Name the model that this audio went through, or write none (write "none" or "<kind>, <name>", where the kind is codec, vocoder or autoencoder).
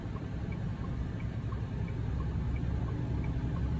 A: none